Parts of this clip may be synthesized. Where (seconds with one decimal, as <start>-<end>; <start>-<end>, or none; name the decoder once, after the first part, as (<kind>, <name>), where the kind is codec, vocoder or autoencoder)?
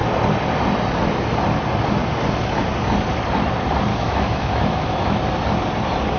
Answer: 3.9-5.2 (autoencoder, DAC-VAE)